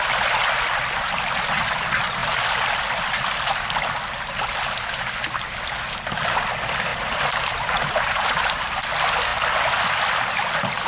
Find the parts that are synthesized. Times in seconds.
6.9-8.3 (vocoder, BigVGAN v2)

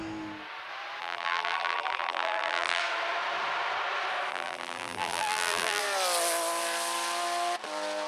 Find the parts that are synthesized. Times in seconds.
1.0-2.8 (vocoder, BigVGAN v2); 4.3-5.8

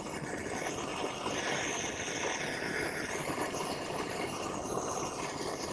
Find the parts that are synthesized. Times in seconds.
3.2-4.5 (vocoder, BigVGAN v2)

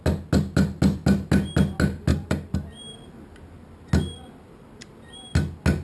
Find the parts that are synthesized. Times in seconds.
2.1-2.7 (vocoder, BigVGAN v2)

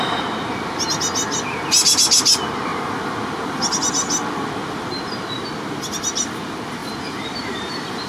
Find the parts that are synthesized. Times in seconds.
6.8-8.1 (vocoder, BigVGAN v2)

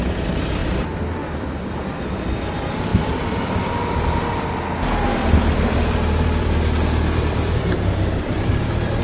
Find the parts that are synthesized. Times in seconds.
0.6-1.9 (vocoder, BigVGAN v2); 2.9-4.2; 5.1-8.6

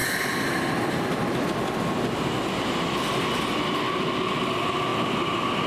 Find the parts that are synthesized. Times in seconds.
none

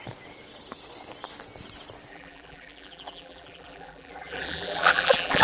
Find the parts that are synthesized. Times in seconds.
2.1-5.4 (vocoder, BigVGAN v2)